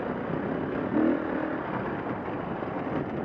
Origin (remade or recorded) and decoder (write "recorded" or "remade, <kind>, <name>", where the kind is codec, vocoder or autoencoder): recorded